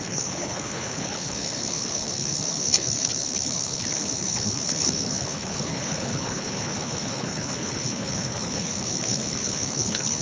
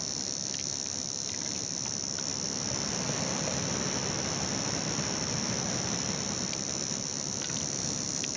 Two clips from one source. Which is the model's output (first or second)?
first